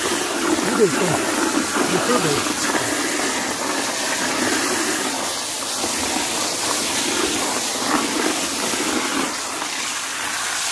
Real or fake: real